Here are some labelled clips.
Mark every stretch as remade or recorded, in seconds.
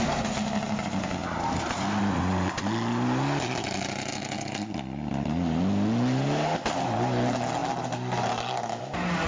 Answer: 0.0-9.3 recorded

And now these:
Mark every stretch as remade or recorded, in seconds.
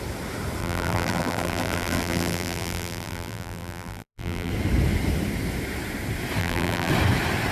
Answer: 0.0-0.6 recorded; 0.6-4.5 remade; 4.5-6.4 recorded; 6.4-6.9 remade; 6.9-7.5 recorded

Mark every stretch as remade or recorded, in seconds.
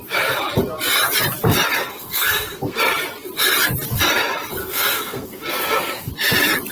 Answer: 0.0-1.8 recorded; 1.8-2.8 remade; 2.8-4.6 recorded; 4.6-6.1 remade; 6.1-6.7 recorded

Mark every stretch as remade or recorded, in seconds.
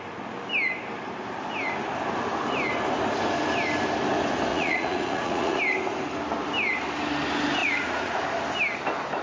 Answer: 0.0-4.5 recorded; 4.5-5.6 remade; 5.6-7.6 recorded; 7.6-8.2 remade; 8.2-9.2 recorded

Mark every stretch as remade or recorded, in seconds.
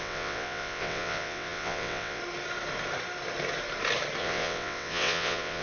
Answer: 0.0-2.2 remade; 2.2-4.2 recorded; 4.2-5.6 remade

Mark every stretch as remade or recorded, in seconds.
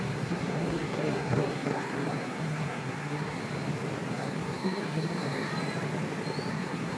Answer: 0.0-3.4 remade; 3.4-4.1 recorded; 4.1-5.5 remade; 5.5-6.5 recorded; 6.5-7.0 remade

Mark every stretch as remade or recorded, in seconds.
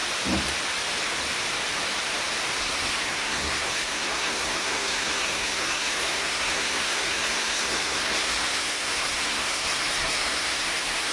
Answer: 0.0-2.6 recorded; 2.6-11.1 remade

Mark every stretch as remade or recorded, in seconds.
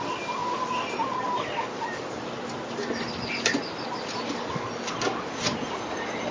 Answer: 0.0-6.3 recorded